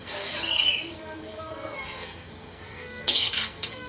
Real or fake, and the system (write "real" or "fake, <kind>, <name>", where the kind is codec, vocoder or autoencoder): fake, codec, SNAC